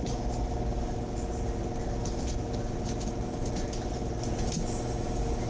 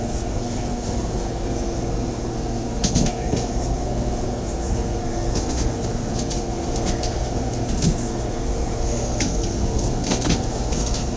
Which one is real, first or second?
first